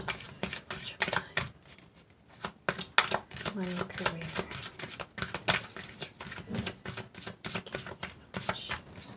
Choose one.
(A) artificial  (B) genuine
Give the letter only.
B